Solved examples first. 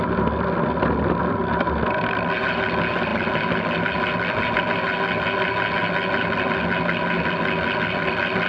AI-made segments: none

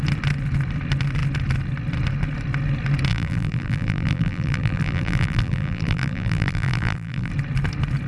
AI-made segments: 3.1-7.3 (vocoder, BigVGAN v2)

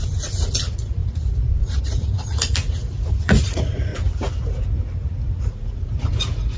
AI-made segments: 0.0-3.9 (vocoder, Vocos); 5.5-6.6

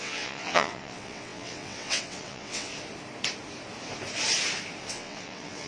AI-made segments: 0.0-2.7 (vocoder, WaveNeXt); 4.8-5.7

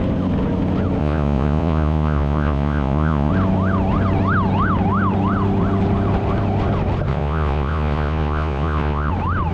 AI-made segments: 1.0-3.3 (vocoder, Vocos); 7.1-9.1